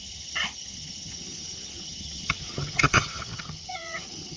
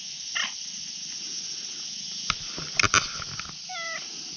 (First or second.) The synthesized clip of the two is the first